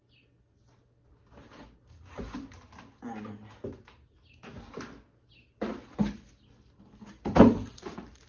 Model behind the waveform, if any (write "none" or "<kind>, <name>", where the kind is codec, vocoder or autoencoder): none